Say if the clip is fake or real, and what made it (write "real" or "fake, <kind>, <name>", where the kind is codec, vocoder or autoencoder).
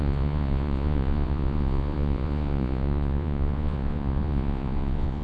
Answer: fake, vocoder, Vocos